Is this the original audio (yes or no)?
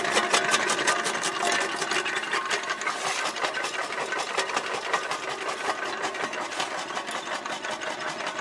yes